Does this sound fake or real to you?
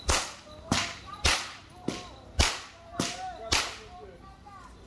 real